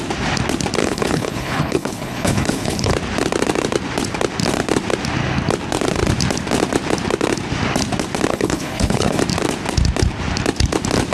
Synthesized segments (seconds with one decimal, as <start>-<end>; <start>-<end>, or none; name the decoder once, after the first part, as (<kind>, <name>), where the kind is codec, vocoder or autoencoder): 0.8-2.9 (codec, HILCodec); 8.3-9.2